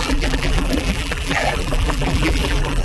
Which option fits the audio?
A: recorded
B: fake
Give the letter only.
B